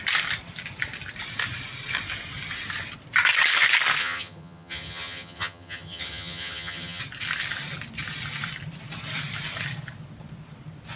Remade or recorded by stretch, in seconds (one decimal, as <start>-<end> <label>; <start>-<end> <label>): 0.0-4.0 recorded; 4.0-7.0 remade; 7.0-11.0 recorded